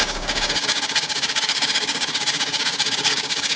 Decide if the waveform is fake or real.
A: fake